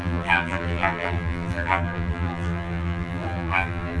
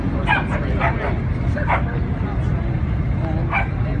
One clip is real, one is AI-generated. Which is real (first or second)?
second